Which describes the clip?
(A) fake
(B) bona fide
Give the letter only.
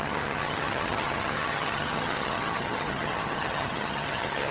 A